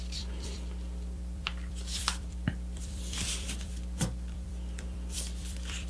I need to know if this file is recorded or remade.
remade